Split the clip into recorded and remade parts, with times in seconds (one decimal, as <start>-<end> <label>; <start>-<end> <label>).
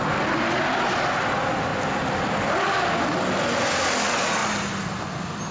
0.0-5.5 recorded